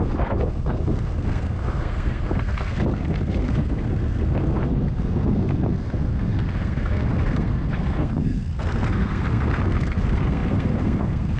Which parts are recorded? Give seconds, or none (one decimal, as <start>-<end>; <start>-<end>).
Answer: none